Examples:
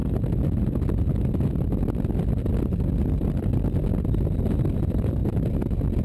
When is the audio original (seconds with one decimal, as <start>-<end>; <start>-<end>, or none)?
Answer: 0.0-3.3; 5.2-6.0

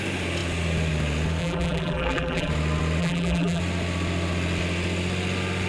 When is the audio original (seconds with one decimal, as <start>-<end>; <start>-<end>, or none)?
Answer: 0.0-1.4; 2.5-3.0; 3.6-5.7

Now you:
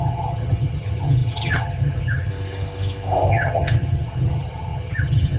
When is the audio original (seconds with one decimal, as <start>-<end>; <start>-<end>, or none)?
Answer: 2.3-3.3

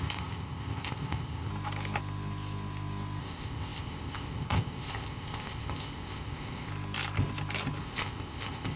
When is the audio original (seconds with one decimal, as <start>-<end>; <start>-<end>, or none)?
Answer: 1.5-3.2; 6.7-7.8

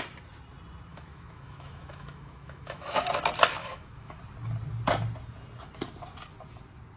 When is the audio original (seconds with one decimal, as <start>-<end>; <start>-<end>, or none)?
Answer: 0.0-0.9; 3.0-3.6; 4.2-7.0

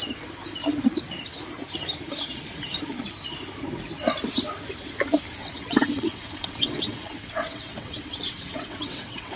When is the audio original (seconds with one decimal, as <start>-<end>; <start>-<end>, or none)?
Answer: 0.0-5.4